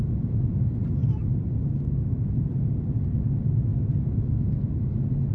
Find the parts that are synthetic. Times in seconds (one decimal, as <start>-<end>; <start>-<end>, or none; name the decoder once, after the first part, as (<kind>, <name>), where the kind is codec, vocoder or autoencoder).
none

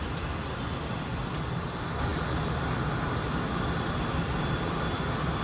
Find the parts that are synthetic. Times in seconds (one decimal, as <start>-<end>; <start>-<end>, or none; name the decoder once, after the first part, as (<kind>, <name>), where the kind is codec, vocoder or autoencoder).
2.1-3.6 (vocoder, BigVGAN v2)

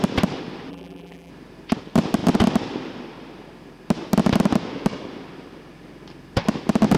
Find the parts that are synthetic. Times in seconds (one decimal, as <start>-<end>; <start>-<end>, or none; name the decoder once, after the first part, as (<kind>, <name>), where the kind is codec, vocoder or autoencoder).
0.7-1.3 (vocoder, BigVGAN v2)

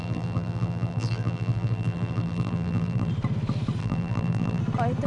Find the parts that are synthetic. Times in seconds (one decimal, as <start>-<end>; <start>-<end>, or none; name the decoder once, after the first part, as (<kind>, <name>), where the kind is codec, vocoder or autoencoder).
0.0-3.1 (vocoder, BigVGAN v2); 3.8-4.6

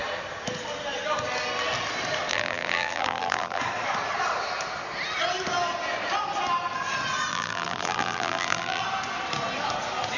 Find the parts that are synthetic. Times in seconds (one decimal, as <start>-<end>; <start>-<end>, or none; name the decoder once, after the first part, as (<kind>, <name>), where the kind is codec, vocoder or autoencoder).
2.3-3.6 (vocoder, BigVGAN v2); 7.3-8.8

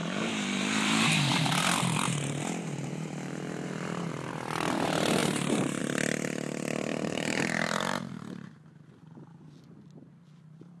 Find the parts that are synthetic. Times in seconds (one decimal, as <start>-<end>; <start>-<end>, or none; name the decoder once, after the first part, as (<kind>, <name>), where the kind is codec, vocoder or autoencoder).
0.0-4.3 (vocoder, BigVGAN v2); 6.9-8.2